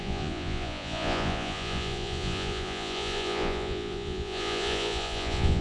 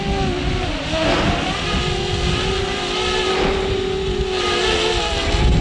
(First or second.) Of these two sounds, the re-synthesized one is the first